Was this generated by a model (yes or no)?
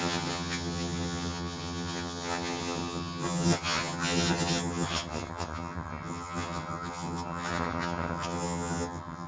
yes